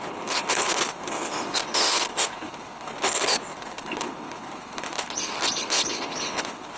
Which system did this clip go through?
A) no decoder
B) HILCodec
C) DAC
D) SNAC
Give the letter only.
B